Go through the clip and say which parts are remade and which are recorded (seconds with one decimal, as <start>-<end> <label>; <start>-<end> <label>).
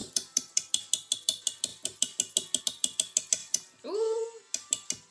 0.0-0.7 remade; 0.7-3.4 recorded; 3.4-4.2 remade; 4.2-5.1 recorded